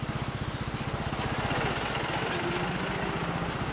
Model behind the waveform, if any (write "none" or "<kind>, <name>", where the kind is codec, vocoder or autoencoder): none